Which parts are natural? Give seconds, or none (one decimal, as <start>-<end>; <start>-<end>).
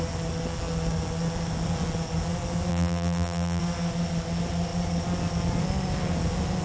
0.0-2.7; 3.6-6.6